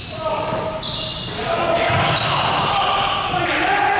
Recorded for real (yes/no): yes